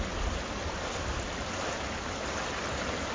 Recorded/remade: recorded